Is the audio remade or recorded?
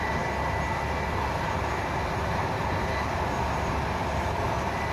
recorded